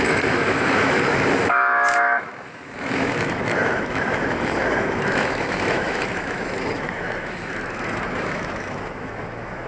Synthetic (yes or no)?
yes